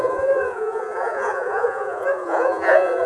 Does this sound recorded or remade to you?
remade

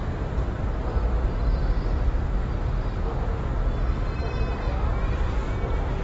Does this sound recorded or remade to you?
recorded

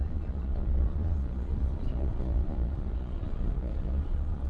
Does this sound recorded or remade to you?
remade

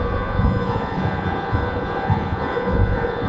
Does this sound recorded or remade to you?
remade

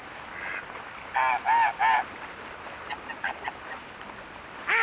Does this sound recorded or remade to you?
recorded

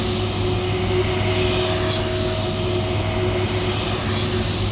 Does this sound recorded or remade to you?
recorded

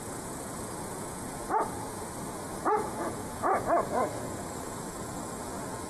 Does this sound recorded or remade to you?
remade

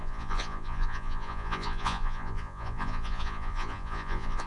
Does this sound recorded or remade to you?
remade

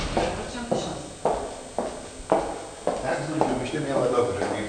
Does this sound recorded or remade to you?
recorded